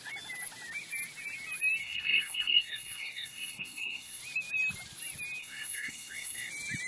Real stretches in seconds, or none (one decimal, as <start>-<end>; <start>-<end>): 0.0-1.8; 4.2-5.4; 6.5-6.9